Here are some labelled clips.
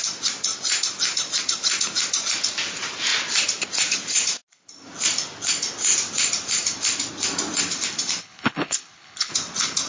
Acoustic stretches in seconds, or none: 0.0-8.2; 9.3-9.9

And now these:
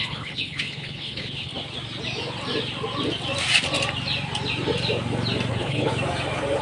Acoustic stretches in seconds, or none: 1.5-5.5; 5.9-6.6

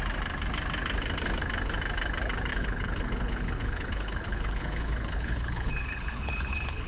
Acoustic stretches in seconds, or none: 0.0-2.5

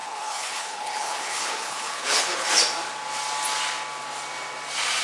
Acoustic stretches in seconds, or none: 2.5-5.0

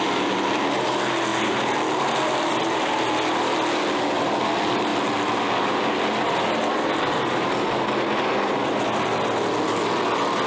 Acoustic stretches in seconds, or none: 0.0-10.5

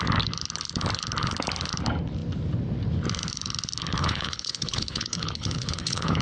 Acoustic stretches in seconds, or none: 0.0-4.0